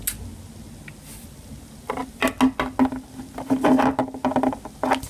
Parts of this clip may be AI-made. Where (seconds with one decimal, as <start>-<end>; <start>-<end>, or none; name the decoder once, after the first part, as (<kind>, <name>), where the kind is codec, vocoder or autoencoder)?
none